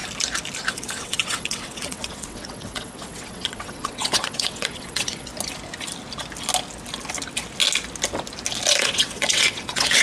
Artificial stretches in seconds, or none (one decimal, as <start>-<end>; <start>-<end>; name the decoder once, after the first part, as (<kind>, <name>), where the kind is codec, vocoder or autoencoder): 0.7-5.3 (vocoder, WaveNeXt); 8.8-10.0